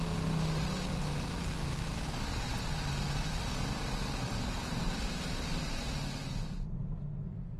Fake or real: real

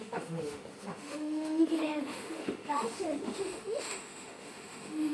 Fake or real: fake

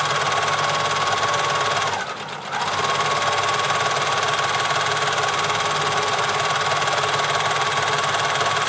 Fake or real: real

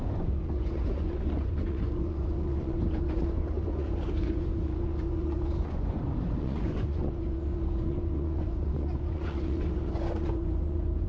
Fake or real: fake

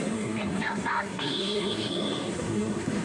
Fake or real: fake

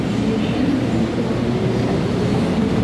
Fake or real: real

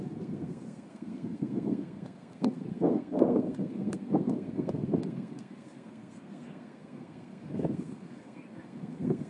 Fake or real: fake